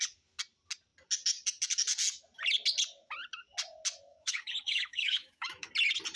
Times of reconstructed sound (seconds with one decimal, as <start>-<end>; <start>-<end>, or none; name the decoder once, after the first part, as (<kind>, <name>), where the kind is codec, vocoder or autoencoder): 4.1-5.7 (autoencoder, DAC-VAE)